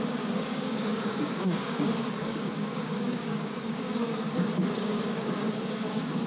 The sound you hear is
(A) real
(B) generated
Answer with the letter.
B